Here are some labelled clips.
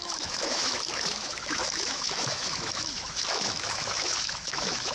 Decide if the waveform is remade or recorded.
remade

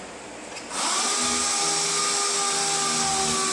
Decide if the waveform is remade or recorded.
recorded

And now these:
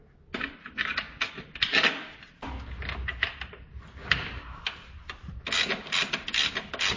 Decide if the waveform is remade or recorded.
recorded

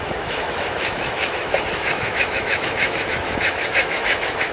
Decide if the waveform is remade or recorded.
remade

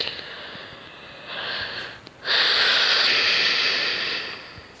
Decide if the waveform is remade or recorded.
recorded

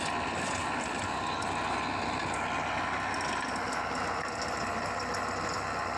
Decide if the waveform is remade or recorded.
recorded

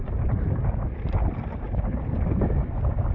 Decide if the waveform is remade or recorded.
recorded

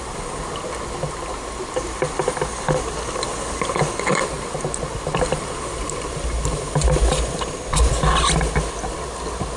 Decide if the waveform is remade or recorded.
recorded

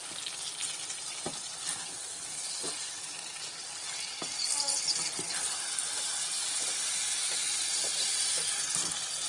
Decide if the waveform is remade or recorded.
recorded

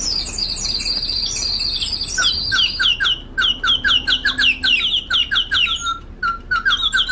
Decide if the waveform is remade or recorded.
recorded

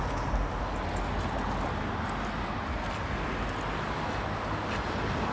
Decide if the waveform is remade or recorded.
recorded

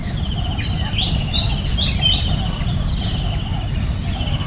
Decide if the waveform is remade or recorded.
recorded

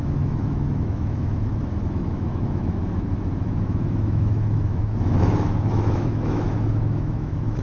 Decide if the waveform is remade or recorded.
remade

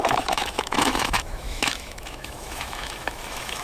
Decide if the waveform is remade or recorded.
remade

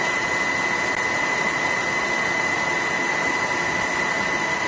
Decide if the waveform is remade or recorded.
recorded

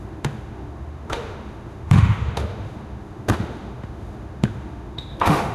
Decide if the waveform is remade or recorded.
remade